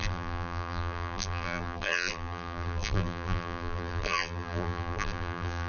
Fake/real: fake